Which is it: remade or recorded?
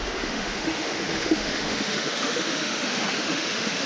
remade